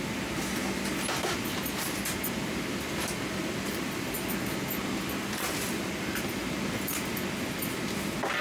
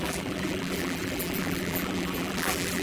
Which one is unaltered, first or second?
first